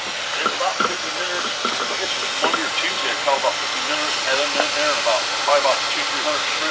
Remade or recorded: recorded